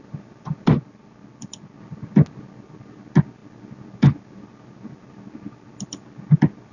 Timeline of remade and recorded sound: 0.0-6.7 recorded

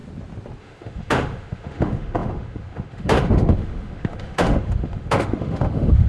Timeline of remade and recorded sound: 0.0-0.6 recorded; 0.6-6.1 remade